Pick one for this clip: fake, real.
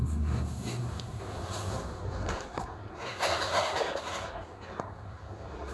fake